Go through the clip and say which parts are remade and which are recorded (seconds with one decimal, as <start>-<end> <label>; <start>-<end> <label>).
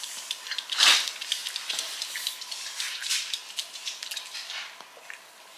0.0-1.4 recorded; 1.4-4.8 remade; 4.8-5.6 recorded